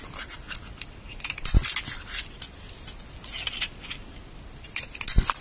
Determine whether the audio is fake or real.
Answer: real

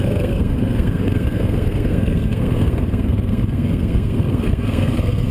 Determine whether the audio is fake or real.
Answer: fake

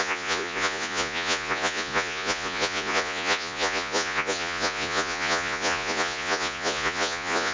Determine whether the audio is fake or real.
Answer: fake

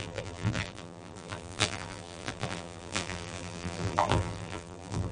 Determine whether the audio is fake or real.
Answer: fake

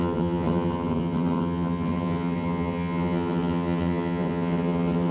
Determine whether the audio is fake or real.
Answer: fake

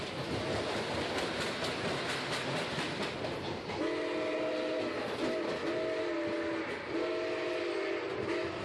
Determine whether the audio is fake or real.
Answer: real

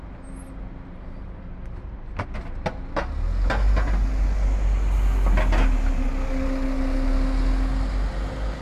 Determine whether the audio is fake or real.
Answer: real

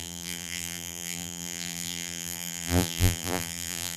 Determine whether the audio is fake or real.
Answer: fake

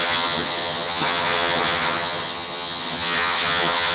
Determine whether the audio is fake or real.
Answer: fake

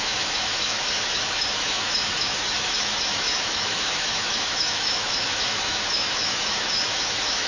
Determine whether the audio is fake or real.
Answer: fake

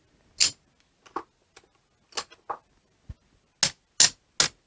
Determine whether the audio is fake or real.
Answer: real